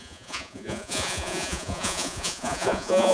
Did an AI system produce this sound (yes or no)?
yes